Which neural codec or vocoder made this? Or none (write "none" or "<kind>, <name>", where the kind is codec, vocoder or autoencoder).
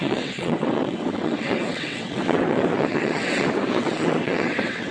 vocoder, WaveNeXt